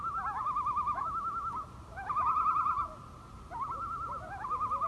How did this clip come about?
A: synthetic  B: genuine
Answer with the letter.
B